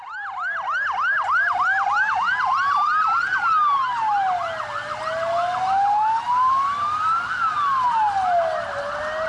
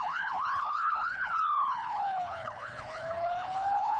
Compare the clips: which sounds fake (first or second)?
second